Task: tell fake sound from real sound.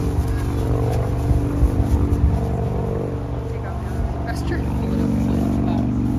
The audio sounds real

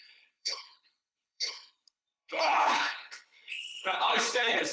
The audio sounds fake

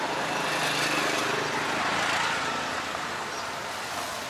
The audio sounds real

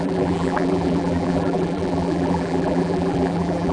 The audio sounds fake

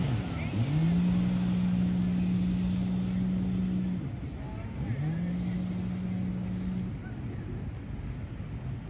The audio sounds real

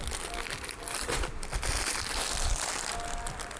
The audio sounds real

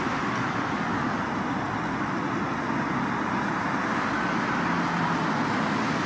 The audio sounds real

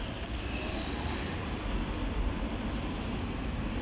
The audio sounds real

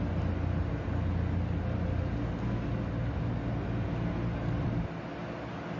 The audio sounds real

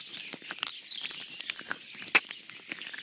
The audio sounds real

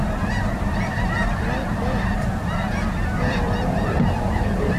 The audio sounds fake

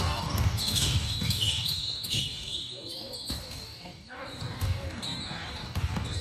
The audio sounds fake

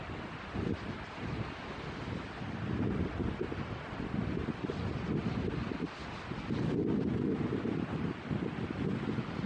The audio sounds real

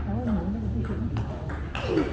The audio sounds real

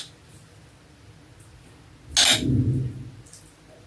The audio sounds real